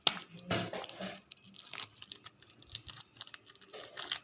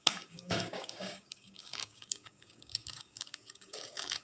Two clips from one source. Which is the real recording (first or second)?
first